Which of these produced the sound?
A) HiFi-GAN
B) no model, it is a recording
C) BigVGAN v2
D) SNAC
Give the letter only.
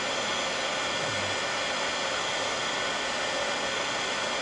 B